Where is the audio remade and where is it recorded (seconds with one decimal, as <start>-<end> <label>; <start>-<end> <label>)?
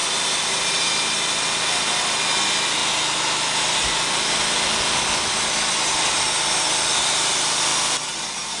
0.0-2.8 remade; 2.8-6.1 recorded; 6.1-7.7 remade; 7.7-8.6 recorded